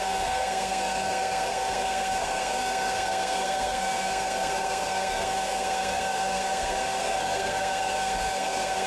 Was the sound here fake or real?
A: fake